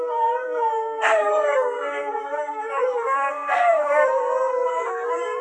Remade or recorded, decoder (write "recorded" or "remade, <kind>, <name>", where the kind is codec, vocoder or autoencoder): remade, codec, SNAC